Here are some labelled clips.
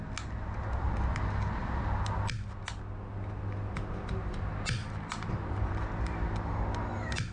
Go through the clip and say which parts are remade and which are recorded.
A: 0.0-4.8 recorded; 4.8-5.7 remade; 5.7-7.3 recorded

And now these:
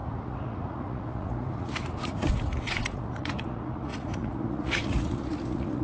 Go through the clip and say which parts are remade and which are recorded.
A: 0.0-5.8 remade

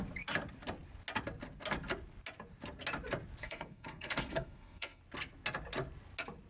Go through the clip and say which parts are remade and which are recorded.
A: 0.0-3.4 recorded; 3.4-5.0 remade; 5.0-6.5 recorded

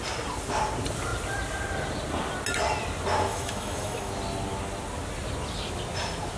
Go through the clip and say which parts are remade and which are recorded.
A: 0.0-3.3 recorded; 3.3-4.1 remade; 4.1-6.4 recorded

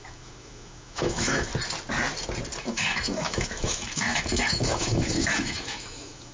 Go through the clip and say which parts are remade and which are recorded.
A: 0.0-1.5 remade; 1.5-2.6 recorded; 2.6-6.3 remade

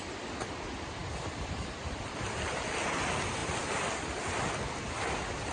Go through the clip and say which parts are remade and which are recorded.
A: 0.0-1.0 recorded; 1.0-2.7 remade; 2.7-3.4 recorded; 3.4-4.3 remade; 4.3-5.5 recorded